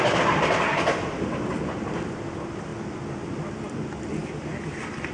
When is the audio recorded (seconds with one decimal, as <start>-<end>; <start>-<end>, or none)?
0.0-4.2